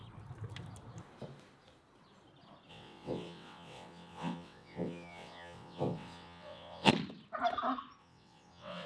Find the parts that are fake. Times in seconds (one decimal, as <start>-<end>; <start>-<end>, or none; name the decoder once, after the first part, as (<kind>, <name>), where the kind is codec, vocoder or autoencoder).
2.7-6.9 (vocoder, WaveNeXt); 8.0-8.9